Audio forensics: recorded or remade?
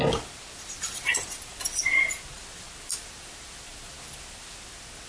recorded